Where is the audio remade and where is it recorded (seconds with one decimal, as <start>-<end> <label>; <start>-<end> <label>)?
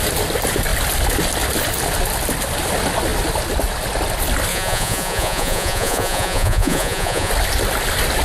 0.0-4.5 recorded; 4.5-7.3 remade; 7.3-8.2 recorded